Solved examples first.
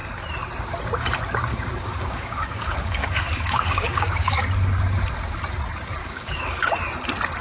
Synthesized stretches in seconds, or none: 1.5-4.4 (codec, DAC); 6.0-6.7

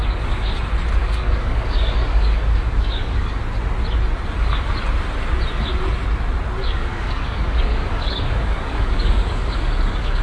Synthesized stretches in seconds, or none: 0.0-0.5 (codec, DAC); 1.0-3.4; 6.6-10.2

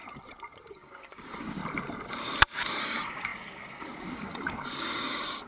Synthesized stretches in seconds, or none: 0.7-1.6 (codec, DAC); 2.8-5.5

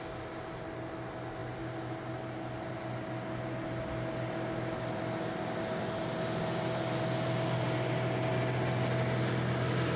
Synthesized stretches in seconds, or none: none

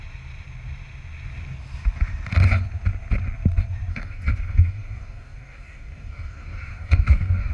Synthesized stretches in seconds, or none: 3.9-7.5 (codec, DAC)